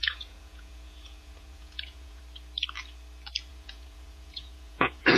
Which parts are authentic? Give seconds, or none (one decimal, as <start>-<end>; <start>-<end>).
2.2-3.5